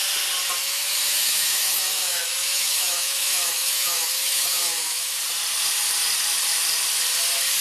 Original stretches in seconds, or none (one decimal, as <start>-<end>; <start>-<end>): 0.0-0.6; 5.2-7.6